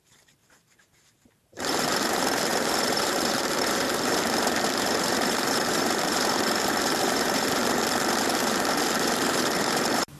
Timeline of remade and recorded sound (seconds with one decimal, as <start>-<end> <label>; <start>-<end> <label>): 0.0-7.6 remade; 7.6-8.2 recorded; 8.2-10.2 remade